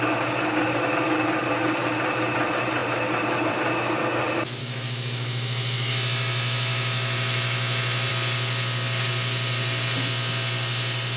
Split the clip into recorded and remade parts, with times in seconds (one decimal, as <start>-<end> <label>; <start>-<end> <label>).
0.0-4.6 recorded; 4.6-8.1 remade; 8.1-11.2 recorded